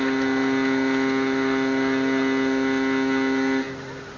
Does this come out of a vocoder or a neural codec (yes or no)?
no